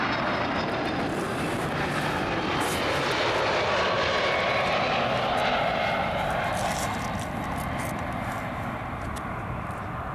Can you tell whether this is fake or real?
real